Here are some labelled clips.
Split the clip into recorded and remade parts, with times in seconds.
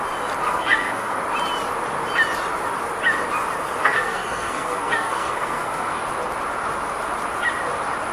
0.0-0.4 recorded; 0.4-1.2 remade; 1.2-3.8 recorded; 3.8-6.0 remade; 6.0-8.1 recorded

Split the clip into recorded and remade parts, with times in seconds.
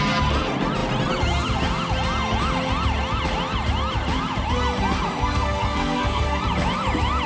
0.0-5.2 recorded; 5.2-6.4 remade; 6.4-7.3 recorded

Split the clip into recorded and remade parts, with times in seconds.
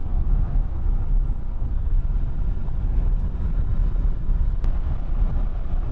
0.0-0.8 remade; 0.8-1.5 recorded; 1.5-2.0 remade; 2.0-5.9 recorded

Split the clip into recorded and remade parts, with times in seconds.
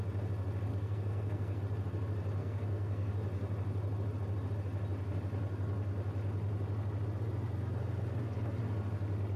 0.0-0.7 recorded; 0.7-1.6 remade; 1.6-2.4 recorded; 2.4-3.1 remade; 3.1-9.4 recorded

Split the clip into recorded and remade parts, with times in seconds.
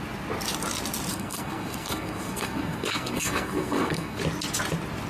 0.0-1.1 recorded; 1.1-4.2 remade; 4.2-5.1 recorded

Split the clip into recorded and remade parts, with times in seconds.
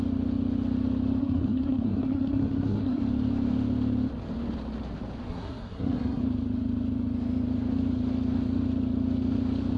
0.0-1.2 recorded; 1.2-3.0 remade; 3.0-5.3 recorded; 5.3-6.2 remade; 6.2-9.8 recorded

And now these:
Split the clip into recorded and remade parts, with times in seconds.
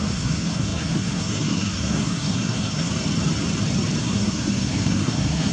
0.0-2.9 remade; 2.9-4.0 recorded; 4.0-5.5 remade